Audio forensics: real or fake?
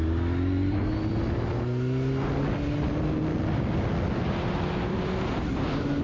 real